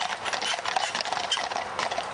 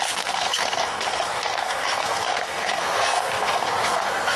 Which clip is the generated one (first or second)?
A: second